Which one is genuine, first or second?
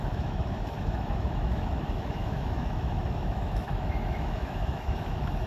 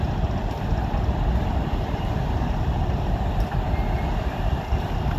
second